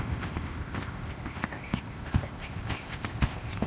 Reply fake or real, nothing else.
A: fake